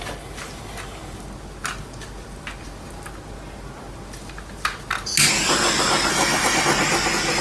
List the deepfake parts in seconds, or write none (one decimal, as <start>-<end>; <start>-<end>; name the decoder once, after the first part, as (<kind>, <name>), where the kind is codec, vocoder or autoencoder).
6.1-6.7 (autoencoder, DAC-VAE)